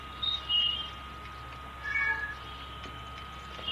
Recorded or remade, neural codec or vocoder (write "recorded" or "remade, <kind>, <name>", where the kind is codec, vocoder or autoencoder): recorded